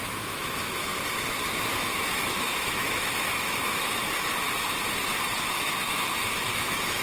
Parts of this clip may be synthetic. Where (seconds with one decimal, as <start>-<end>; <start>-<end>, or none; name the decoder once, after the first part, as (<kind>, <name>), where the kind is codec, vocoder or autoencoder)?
0.0-0.9 (autoencoder, DAC-VAE); 1.5-4.0; 5.4-7.0